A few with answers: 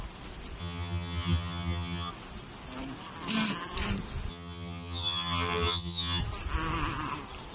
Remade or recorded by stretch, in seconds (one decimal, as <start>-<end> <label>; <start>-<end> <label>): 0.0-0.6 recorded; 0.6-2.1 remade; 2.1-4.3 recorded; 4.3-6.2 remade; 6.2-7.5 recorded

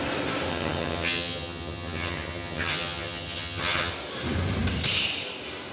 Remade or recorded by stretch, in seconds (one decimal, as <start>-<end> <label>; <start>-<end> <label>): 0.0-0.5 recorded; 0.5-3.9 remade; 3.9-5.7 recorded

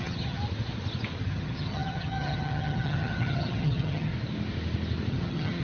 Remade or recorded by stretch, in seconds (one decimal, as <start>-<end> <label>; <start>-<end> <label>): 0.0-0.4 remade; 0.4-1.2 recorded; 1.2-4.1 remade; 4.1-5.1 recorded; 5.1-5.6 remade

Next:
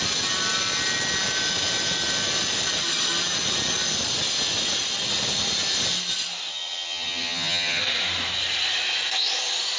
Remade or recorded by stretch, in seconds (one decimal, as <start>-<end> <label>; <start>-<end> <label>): 0.0-6.5 recorded; 6.5-7.8 remade; 7.8-9.8 recorded

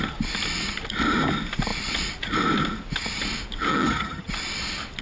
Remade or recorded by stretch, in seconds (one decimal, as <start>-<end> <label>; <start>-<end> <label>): 0.0-3.7 recorded; 3.7-4.3 remade; 4.3-5.0 recorded